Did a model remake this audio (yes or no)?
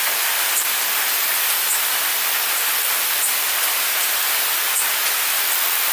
no